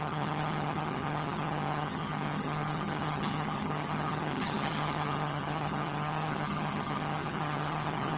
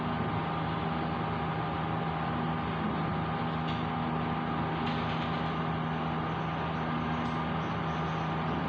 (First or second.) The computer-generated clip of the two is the first